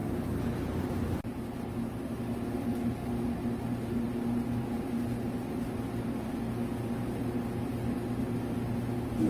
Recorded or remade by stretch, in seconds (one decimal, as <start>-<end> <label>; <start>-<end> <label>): 0.0-9.3 recorded